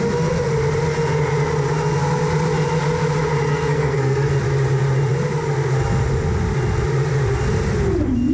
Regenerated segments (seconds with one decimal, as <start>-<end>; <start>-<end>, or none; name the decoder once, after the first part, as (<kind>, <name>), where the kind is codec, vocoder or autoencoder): 3.5-4.3 (codec, SNAC)